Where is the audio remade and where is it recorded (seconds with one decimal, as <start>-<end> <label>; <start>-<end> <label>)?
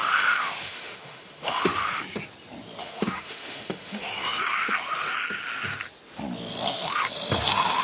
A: 0.0-2.0 remade; 2.0-2.8 recorded; 2.8-4.1 remade; 4.1-7.8 recorded